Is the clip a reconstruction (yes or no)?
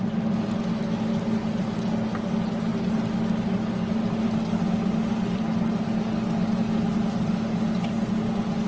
no